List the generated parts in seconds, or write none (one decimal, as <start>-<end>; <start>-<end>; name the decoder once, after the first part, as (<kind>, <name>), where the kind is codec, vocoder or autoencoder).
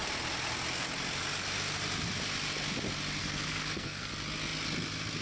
3.2-4.1 (codec, SNAC)